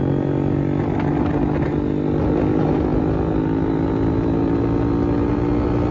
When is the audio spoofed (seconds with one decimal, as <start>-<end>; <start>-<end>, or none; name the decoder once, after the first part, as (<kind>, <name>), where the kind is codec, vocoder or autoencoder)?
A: none